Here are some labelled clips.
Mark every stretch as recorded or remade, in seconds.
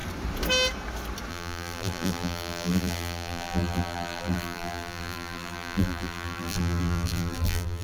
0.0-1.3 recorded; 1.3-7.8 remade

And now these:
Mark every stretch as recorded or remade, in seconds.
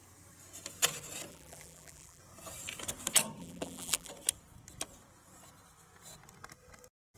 0.0-1.3 recorded; 1.3-2.2 remade; 2.2-3.4 recorded; 3.4-4.1 remade; 4.1-7.2 recorded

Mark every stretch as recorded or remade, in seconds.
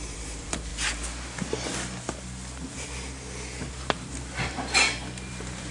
0.0-0.7 remade; 0.7-3.7 recorded; 3.7-5.7 remade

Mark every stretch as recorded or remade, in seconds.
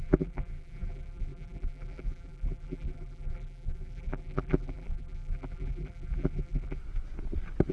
0.0-6.8 remade; 6.8-7.7 recorded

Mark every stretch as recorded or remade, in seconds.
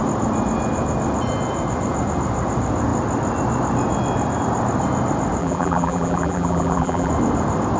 0.0-5.4 recorded; 5.4-7.1 remade; 7.1-7.8 recorded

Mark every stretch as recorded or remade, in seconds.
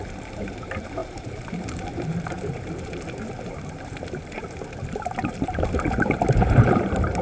0.0-7.2 remade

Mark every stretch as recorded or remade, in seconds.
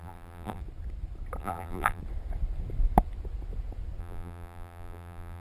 0.0-0.6 remade; 0.6-1.4 recorded; 1.4-2.0 remade; 2.0-4.0 recorded; 4.0-5.4 remade